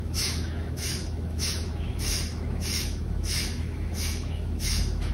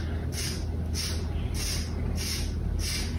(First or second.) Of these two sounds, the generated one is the first